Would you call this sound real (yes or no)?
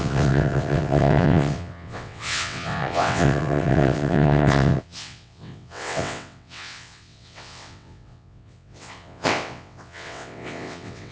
no